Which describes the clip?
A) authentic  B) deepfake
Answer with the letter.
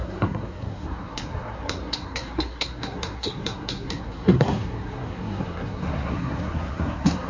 B